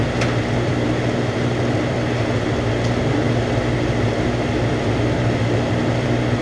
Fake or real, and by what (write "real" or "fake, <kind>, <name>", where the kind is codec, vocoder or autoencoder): real